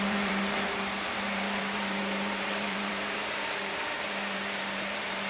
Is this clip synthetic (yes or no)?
yes